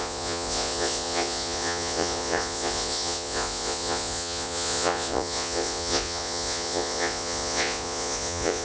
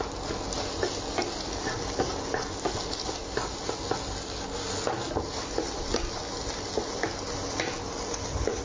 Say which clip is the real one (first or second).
second